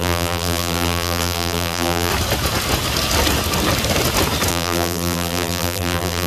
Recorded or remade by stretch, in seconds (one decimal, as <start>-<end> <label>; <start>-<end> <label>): 0.0-2.1 remade; 2.1-4.5 recorded; 4.5-6.3 remade